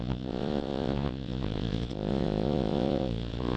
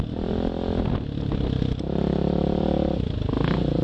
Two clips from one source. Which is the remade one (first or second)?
first